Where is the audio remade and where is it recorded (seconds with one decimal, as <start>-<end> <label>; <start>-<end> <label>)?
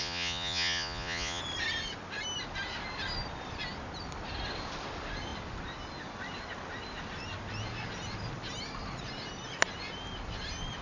0.0-1.4 remade; 1.4-10.8 recorded